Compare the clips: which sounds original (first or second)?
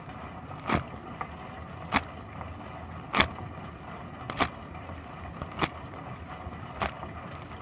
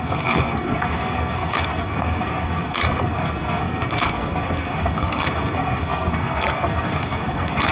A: first